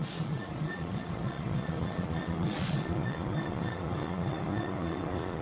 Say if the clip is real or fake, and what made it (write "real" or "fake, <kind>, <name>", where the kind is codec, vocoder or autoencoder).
fake, vocoder, Vocos